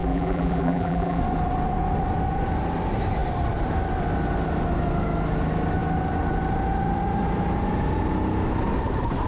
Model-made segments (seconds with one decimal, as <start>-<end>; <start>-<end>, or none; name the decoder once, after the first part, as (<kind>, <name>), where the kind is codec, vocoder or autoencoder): 0.0-1.2 (vocoder, BigVGAN v2)